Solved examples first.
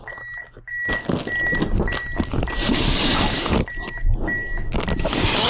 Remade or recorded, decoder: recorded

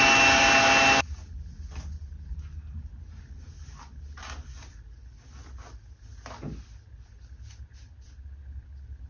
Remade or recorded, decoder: recorded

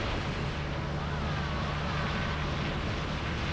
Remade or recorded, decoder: recorded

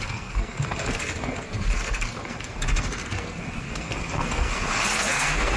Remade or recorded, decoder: remade, codec, SNAC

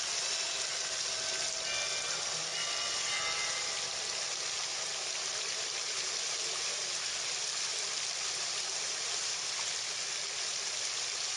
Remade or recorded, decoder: recorded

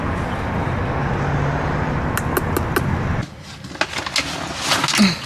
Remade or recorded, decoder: recorded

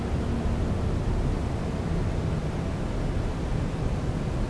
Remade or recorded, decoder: recorded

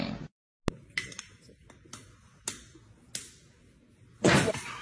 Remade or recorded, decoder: recorded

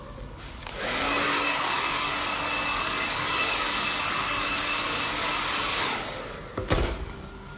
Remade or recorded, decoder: remade, codec, DAC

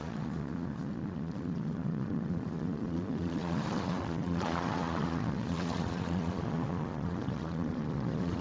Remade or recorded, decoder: remade, vocoder, Vocos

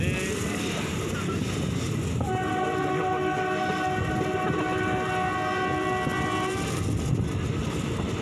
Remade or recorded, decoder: recorded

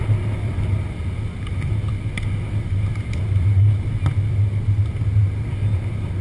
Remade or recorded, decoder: recorded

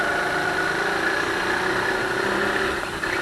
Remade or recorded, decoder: recorded